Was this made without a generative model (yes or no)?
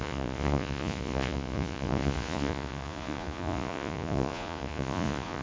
no